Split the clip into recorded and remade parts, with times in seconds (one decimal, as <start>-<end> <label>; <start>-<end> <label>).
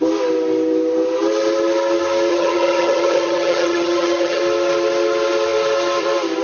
0.0-2.3 recorded; 2.3-4.4 remade; 4.4-6.4 recorded